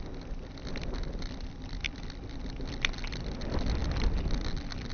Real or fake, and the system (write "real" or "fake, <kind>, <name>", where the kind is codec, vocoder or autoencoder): real